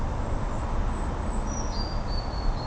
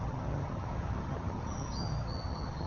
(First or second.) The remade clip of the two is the second